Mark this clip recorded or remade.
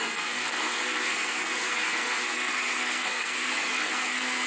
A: remade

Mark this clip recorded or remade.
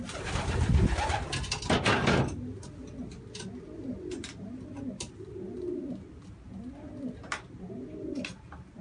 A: recorded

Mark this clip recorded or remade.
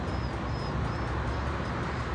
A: recorded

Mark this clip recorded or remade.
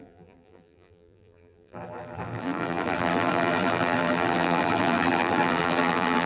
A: remade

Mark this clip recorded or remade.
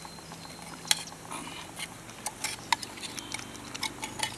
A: recorded